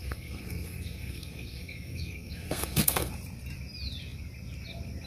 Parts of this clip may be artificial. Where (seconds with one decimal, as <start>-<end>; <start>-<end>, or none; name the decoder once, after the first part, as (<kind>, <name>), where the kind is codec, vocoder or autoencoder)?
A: 0.0-3.1 (codec, SNAC)

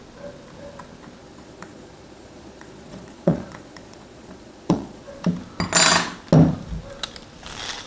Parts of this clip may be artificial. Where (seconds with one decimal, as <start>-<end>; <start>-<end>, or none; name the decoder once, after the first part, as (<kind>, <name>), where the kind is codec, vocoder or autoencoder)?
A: 1.2-5.1 (vocoder, Vocos)

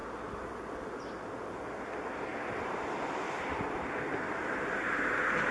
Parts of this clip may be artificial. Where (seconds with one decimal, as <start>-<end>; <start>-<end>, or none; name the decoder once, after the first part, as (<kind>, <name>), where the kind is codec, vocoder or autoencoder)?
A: none

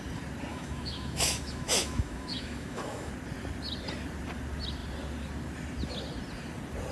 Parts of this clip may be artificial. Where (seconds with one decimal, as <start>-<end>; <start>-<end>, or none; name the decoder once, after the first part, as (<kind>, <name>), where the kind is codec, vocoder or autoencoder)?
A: 0.5-3.1 (autoencoder, DAC-VAE)

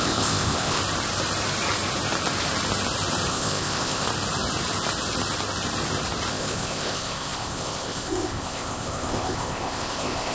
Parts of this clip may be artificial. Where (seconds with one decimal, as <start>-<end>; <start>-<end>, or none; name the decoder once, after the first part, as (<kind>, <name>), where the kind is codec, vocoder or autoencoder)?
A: 0.0-0.8 (codec, ZipCodec); 3.3-4.1; 6.3-10.3

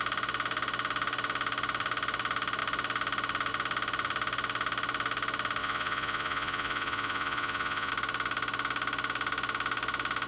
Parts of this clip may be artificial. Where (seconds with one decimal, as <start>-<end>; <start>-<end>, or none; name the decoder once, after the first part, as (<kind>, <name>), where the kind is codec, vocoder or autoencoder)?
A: 5.6-7.9 (vocoder, Vocos)

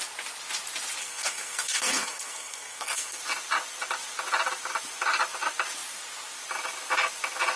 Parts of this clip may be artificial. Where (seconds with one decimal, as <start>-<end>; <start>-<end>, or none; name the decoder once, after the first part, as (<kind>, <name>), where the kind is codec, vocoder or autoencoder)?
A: 1.0-3.2 (codec, SNAC)

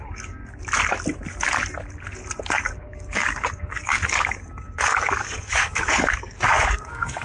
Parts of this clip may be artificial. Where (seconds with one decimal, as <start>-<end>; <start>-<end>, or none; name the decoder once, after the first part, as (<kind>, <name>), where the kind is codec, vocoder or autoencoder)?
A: 0.0-0.4 (codec, DAC); 2.4-7.2